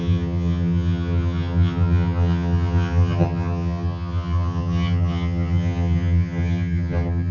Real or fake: fake